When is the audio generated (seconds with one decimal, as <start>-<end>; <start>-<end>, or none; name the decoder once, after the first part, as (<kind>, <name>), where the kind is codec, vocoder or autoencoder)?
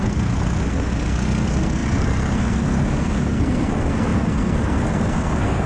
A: 0.0-5.7 (codec, SNAC)